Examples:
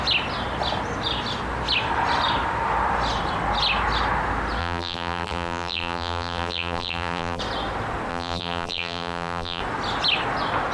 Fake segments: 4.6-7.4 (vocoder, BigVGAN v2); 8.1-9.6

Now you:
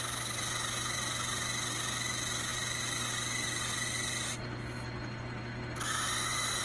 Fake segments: none

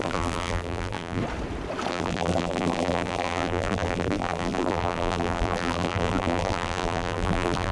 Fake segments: 0.0-1.2 (vocoder, BigVGAN v2); 1.9-7.7

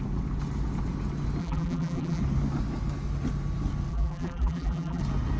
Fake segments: 1.4-2.2 (vocoder, BigVGAN v2); 3.9-5.0

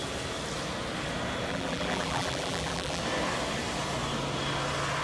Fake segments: 1.5-3.0 (vocoder, BigVGAN v2)